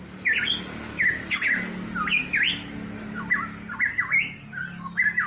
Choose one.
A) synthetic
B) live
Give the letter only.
B